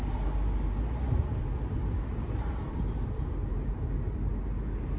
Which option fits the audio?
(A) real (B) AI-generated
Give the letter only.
A